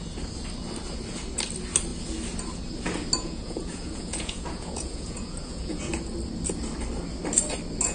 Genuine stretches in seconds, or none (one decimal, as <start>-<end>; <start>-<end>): 0.0-3.2; 5.9-7.9

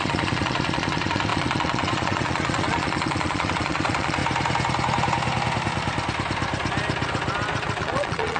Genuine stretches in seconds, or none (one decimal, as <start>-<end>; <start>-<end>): 4.2-7.8

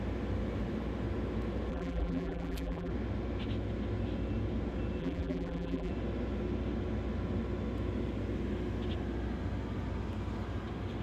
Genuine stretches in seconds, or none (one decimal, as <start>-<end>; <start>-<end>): 0.0-1.7; 2.9-5.0; 5.9-11.0

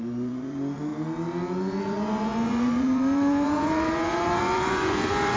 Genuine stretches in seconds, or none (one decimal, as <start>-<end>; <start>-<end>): 0.9-1.6

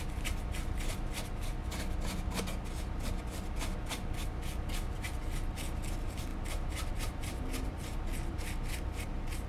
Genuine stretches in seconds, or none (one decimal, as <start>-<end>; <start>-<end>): 0.0-9.5